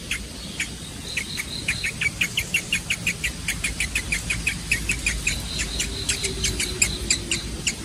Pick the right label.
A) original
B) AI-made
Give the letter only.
A